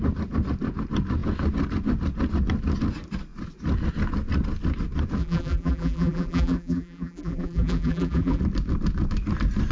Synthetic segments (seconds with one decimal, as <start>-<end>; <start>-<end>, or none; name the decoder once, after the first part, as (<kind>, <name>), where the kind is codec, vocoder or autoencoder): 5.2-8.4 (vocoder, BigVGAN v2)